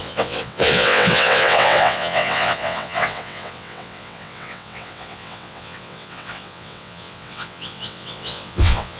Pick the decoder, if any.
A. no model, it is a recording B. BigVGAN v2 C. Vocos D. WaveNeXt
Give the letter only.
D